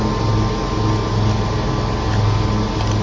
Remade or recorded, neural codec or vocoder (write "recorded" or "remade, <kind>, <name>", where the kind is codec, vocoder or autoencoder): recorded